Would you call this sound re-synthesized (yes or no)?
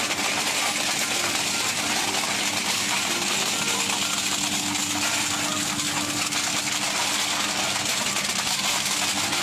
no